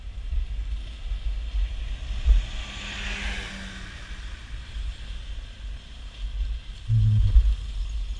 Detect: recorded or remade recorded